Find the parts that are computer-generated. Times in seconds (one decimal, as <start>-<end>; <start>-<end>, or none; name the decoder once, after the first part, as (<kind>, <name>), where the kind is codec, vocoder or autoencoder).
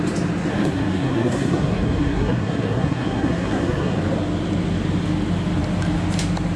0.5-4.0 (codec, SNAC)